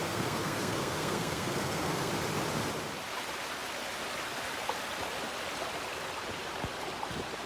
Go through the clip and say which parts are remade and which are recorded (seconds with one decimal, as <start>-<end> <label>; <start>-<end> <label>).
0.0-2.1 remade; 2.1-7.5 recorded